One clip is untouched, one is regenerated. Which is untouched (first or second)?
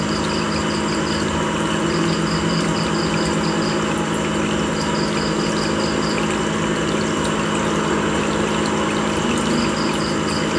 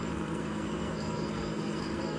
first